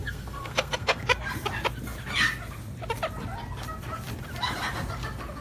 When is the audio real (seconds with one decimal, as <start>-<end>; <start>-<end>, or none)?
1.0-5.4